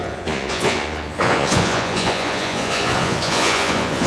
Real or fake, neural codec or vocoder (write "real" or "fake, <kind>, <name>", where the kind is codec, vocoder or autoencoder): fake, vocoder, Vocos